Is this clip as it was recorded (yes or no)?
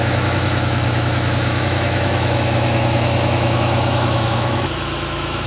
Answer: no